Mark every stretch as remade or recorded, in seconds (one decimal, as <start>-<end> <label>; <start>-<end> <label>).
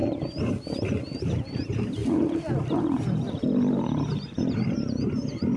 0.0-1.2 recorded; 1.2-2.0 remade; 2.0-3.3 recorded; 3.3-5.6 remade